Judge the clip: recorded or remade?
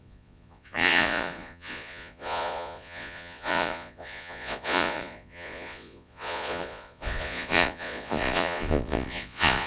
remade